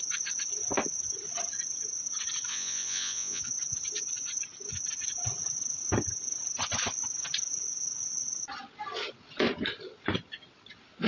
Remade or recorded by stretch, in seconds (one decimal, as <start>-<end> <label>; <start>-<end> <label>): 0.0-2.5 recorded; 2.5-3.4 remade; 3.4-11.1 recorded

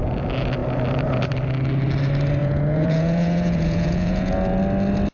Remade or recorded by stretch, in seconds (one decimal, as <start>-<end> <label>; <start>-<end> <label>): 0.0-2.4 recorded; 2.4-4.6 remade; 4.6-5.1 recorded

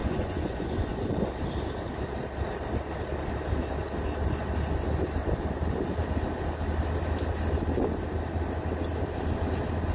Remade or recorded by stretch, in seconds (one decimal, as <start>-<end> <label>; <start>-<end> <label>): 0.0-1.1 remade; 1.1-9.9 recorded

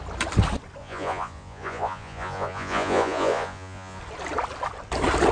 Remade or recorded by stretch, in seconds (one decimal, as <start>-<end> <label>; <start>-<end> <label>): 0.0-0.8 recorded; 0.8-4.0 remade; 4.0-5.3 recorded

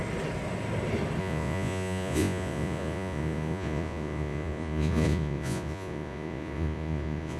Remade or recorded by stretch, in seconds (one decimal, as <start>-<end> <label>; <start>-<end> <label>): 0.0-1.2 recorded; 1.2-7.4 remade

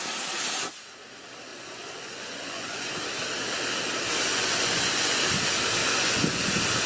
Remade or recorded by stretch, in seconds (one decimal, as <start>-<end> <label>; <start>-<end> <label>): 0.0-1.5 recorded; 1.5-2.9 remade; 2.9-4.3 recorded; 4.3-5.2 remade; 5.2-5.8 recorded; 5.8-6.5 remade; 6.5-6.9 recorded